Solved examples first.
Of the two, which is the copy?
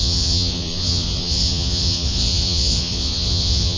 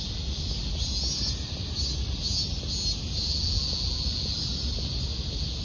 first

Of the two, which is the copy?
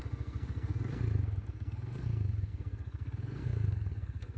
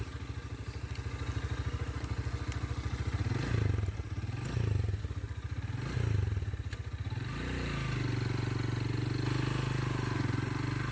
first